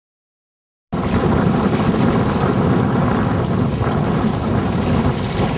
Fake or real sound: real